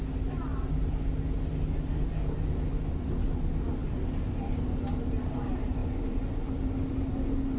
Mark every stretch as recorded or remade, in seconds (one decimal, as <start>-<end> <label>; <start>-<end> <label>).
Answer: 0.0-3.8 recorded; 3.8-4.9 remade; 4.9-7.6 recorded